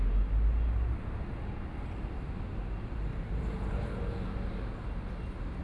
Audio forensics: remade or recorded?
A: recorded